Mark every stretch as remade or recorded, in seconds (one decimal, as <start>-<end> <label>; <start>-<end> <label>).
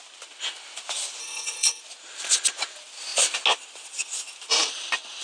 0.0-1.2 recorded; 1.2-1.8 remade; 1.8-5.2 recorded